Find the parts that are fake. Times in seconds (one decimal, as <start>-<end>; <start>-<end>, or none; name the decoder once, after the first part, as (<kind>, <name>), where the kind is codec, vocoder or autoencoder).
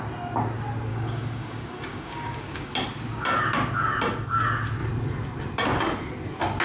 0.9-2.7 (codec, DAC)